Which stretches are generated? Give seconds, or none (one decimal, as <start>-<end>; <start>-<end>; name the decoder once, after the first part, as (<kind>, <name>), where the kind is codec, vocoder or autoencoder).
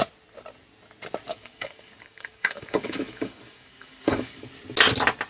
1.3-4.5 (codec, DAC)